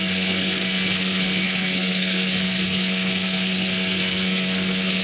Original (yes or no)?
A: no